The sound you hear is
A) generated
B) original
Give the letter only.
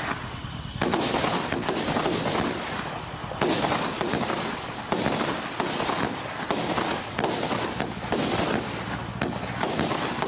B